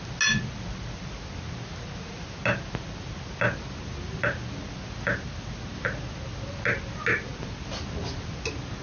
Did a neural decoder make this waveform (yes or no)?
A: no